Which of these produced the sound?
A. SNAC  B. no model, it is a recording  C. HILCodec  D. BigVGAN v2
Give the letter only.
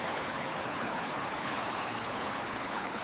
C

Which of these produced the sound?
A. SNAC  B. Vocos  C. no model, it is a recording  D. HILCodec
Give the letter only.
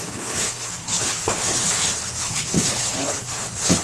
D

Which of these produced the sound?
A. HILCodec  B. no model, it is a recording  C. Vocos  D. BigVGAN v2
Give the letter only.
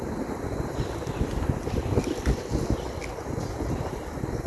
B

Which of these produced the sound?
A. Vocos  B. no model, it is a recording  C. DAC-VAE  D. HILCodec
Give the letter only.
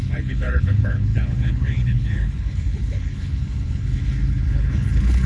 D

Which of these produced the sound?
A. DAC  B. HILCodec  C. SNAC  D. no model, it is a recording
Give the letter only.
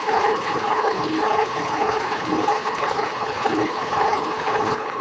B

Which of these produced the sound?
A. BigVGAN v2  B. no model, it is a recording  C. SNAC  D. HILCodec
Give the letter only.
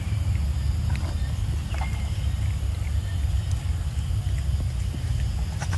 B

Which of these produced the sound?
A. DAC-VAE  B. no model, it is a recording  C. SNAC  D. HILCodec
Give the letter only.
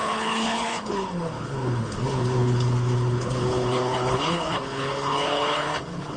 D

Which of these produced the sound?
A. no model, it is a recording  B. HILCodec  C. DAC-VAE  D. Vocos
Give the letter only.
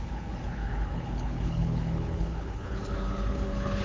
B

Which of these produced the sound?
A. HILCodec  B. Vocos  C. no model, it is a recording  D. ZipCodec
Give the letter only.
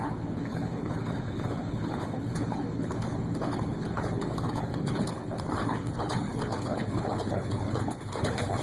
A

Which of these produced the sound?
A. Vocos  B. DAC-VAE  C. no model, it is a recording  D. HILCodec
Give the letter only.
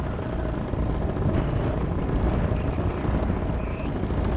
C